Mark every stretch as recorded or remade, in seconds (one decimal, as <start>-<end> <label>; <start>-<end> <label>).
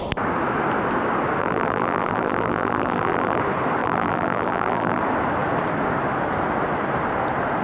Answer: 0.0-1.4 recorded; 1.4-3.4 remade; 3.4-3.8 recorded; 3.8-5.0 remade; 5.0-7.6 recorded